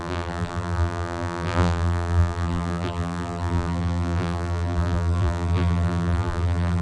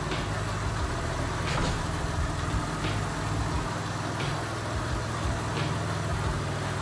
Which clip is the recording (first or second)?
second